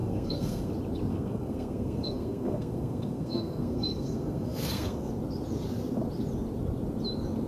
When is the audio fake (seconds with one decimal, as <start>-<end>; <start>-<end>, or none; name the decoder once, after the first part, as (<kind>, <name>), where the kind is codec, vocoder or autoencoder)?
0.0-0.7 (codec, SNAC); 1.1-5.1